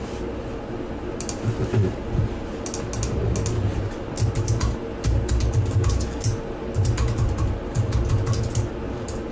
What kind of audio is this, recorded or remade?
recorded